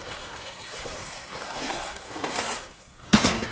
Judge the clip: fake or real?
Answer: fake